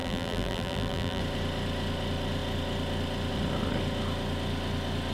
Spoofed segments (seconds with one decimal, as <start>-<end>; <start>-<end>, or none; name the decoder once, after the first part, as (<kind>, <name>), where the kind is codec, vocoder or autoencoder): 0.0-1.2 (vocoder, BigVGAN v2)